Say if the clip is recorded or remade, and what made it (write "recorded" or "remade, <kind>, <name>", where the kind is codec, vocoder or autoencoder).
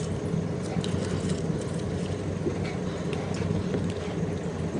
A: recorded